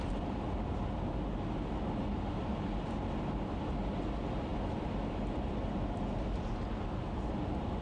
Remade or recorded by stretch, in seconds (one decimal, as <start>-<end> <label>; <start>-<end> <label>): 0.0-7.8 recorded